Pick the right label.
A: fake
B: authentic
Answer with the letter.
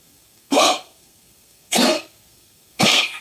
A